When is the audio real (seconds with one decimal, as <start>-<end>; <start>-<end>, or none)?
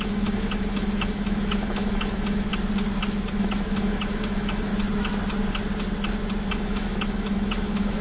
2.5-3.3; 4.7-6.5